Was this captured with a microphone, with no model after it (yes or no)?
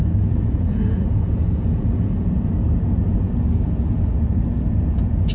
no